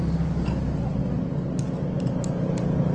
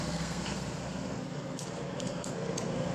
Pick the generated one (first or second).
second